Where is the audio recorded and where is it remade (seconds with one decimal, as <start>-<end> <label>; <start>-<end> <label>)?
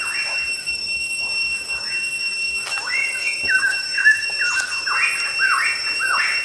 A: 0.0-0.5 recorded; 0.5-4.3 remade; 4.3-6.4 recorded